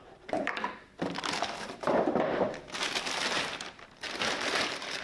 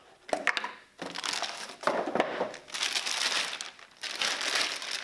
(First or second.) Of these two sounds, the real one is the second